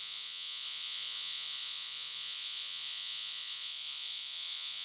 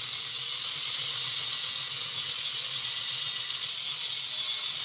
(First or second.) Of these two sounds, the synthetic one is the first